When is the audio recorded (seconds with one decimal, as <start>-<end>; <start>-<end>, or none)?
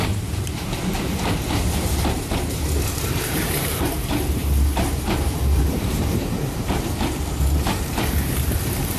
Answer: 4.4-5.6